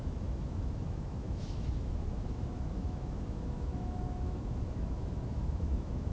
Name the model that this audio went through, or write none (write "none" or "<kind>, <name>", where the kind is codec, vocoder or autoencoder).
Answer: autoencoder, DAC-VAE